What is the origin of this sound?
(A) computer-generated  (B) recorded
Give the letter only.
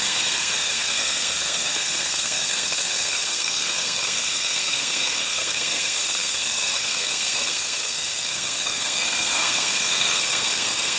A